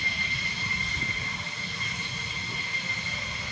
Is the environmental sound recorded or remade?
recorded